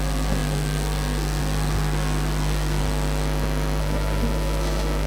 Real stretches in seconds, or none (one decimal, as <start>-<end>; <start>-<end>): 2.8-3.8